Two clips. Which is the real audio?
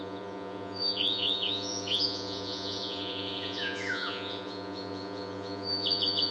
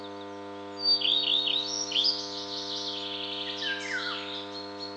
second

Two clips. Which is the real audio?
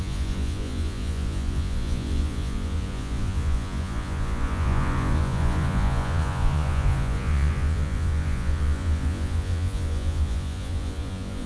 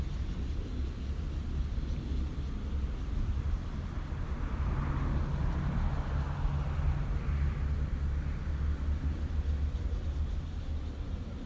second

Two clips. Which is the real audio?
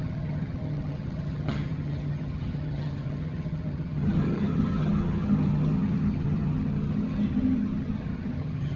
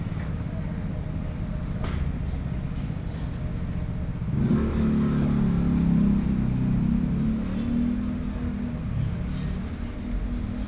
second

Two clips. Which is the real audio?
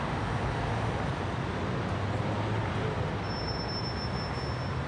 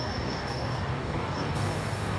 first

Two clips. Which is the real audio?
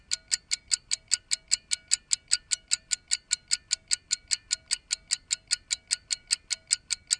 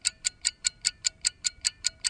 first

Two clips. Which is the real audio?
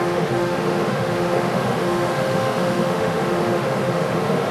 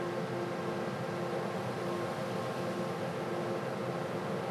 second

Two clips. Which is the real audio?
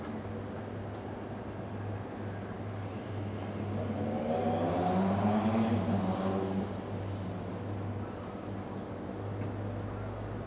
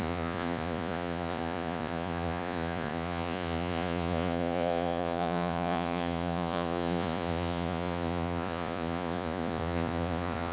first